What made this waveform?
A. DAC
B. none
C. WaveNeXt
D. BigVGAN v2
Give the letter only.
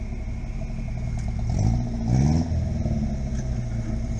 B